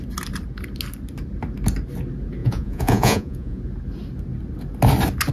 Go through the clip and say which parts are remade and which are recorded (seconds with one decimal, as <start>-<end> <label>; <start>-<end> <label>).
0.0-2.4 recorded; 2.4-3.6 remade; 3.6-5.3 recorded